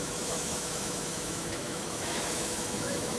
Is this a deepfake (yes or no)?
yes